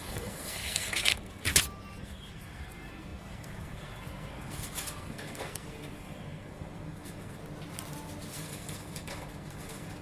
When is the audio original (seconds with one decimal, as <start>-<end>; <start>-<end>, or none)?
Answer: 1.5-2.0; 7.4-8.3